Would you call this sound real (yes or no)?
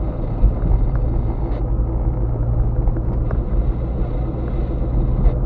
yes